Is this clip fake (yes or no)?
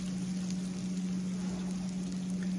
no